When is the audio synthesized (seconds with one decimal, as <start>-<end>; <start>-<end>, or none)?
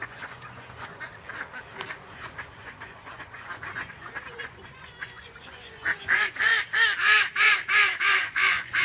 0.0-1.1; 1.9-6.5; 8.0-8.8